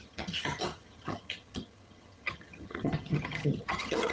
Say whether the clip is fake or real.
fake